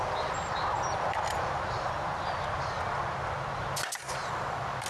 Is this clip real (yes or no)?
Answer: yes